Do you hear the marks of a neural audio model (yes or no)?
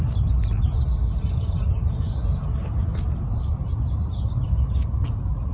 no